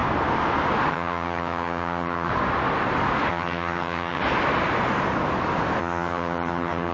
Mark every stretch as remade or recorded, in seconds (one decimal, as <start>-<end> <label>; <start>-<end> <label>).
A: 0.0-0.9 recorded; 0.9-2.3 remade; 2.3-3.3 recorded; 3.3-4.2 remade; 4.2-5.8 recorded; 5.8-6.9 remade